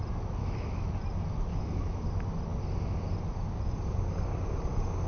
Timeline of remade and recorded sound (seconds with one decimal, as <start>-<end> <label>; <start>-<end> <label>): 0.0-0.4 recorded; 0.4-0.9 remade; 0.9-1.5 recorded; 1.5-2.0 remade; 2.0-5.1 recorded